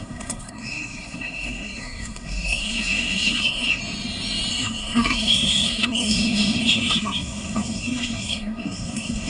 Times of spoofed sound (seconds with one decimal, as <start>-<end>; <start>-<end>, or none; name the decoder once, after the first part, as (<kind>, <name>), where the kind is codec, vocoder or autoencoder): 0.0-3.8 (codec, SNAC); 4.5-9.3